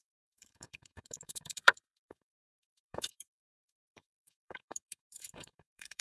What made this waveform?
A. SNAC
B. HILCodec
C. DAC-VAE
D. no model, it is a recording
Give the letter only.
C